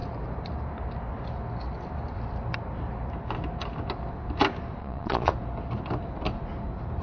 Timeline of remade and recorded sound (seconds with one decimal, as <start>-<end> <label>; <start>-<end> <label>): 0.0-4.8 recorded; 4.8-5.3 remade; 5.3-7.0 recorded